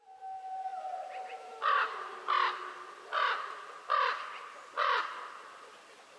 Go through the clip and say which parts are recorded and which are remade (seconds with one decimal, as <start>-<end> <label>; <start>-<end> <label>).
0.0-6.2 recorded